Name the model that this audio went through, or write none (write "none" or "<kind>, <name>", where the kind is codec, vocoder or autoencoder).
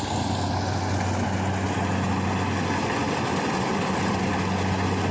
none